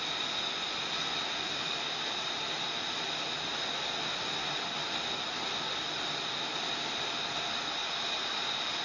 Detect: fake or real real